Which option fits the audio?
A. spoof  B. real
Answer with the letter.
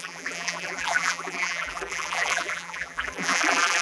A